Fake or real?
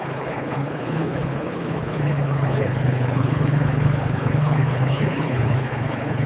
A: fake